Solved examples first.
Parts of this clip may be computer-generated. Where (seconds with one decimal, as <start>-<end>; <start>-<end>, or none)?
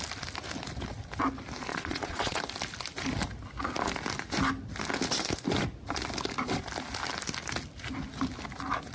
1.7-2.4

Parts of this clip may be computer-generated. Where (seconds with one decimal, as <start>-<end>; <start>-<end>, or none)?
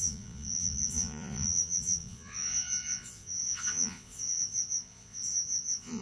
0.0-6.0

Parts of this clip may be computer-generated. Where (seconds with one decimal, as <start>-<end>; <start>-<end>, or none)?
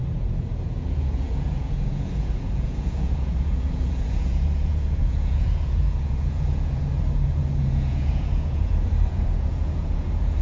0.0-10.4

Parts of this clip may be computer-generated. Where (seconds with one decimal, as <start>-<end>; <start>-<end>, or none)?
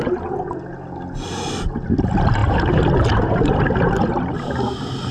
none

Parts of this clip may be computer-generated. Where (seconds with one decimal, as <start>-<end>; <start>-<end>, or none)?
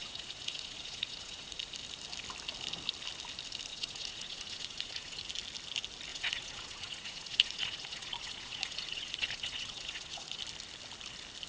0.0-1.6; 3.7-5.2; 6.1-10.4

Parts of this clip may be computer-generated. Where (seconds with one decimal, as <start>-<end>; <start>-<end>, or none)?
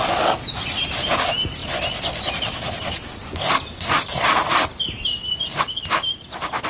1.6-2.3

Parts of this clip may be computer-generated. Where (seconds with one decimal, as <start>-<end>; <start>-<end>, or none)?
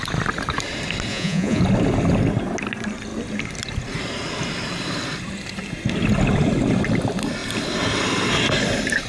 1.1-1.6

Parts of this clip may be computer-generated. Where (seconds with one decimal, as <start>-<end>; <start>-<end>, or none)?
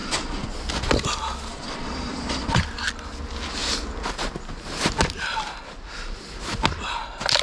0.0-0.5; 1.5-2.6